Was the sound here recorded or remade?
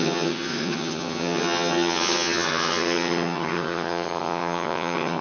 remade